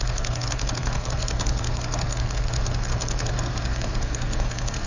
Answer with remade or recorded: remade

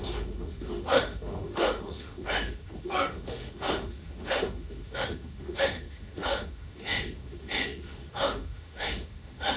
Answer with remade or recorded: remade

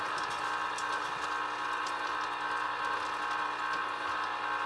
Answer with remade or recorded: recorded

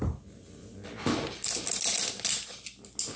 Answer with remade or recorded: recorded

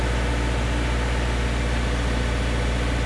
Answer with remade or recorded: recorded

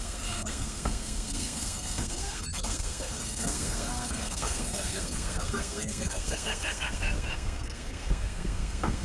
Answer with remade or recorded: remade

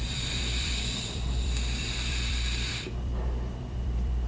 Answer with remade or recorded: remade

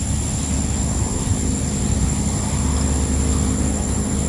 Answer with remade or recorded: recorded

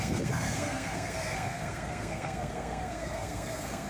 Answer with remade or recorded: remade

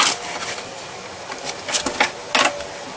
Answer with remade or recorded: recorded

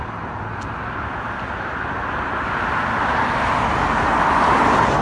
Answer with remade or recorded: recorded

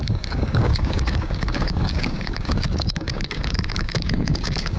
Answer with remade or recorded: remade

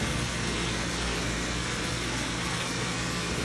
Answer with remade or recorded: remade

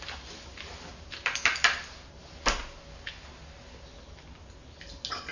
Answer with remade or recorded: recorded